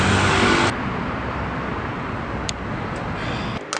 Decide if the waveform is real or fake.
real